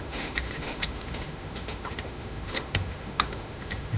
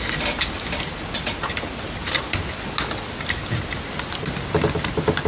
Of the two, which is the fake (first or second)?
first